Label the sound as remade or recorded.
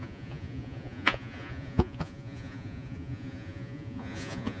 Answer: remade